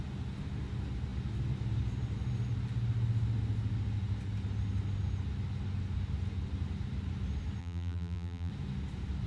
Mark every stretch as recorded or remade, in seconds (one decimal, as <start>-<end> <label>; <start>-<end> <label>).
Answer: 0.0-7.6 recorded; 7.6-8.5 remade; 8.5-9.3 recorded